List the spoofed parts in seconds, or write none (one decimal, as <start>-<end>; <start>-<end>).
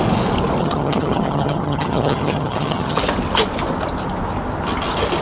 0.6-3.0